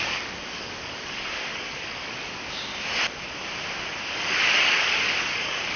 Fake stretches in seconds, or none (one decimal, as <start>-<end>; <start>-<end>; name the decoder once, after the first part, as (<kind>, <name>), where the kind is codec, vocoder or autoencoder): 0.0-2.7 (codec, DAC); 4.1-5.8